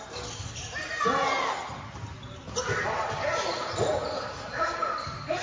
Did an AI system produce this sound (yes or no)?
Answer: no